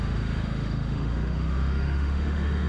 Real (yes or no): no